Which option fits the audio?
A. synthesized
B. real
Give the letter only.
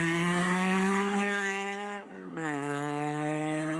A